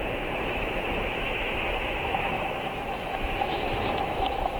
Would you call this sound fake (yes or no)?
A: yes